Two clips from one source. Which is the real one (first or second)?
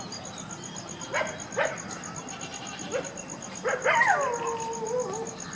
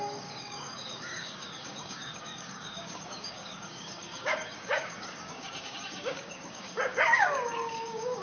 first